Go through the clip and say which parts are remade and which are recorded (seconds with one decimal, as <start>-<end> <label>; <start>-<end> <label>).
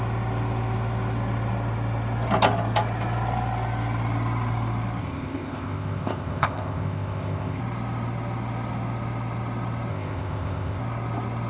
0.0-5.0 recorded; 5.0-7.6 remade; 7.6-9.9 recorded; 9.9-10.8 remade; 10.8-11.5 recorded